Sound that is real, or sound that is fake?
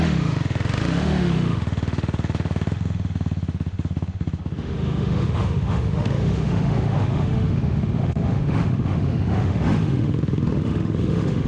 fake